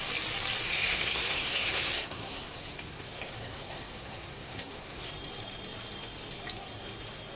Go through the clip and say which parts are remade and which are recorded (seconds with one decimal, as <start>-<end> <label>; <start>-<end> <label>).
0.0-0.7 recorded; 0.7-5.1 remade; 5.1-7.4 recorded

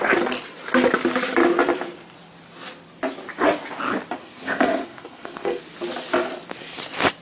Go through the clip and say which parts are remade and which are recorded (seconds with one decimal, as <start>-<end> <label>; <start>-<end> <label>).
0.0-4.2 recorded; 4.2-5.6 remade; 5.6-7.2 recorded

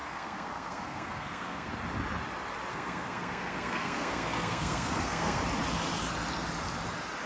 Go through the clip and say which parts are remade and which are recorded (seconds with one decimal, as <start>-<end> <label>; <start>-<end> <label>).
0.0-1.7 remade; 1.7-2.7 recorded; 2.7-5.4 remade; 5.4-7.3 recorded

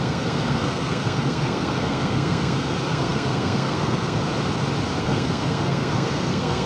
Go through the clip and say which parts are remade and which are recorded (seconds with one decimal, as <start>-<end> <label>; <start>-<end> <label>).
0.0-4.2 remade; 4.2-5.0 recorded; 5.0-6.7 remade